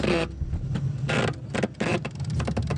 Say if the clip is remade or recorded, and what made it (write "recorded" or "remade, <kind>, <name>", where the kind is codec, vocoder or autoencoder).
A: recorded